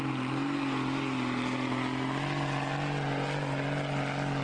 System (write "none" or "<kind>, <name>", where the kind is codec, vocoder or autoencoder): none